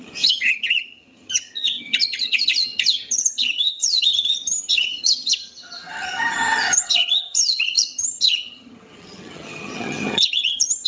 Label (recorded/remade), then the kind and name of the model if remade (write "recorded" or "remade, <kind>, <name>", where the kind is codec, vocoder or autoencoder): remade, vocoder, HiFi-GAN